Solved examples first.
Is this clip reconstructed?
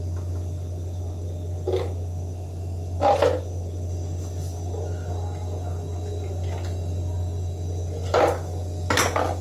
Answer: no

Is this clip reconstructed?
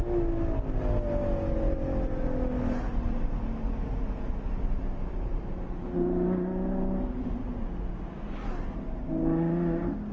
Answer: no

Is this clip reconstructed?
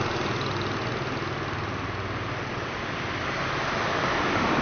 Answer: no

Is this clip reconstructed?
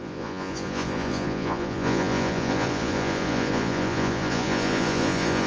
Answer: yes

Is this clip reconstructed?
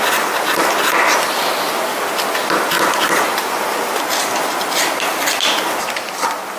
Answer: no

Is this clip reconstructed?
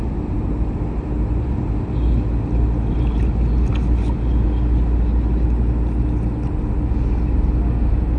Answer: no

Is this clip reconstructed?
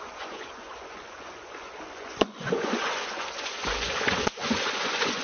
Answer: yes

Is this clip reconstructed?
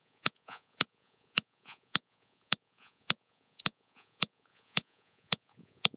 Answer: yes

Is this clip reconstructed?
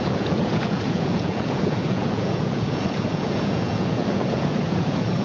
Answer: yes